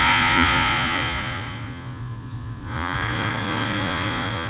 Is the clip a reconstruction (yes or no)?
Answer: yes